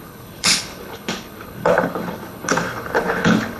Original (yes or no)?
no